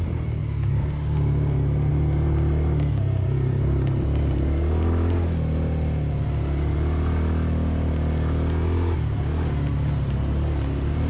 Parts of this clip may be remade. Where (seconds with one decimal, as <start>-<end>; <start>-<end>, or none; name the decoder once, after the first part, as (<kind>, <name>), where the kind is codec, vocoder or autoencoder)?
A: none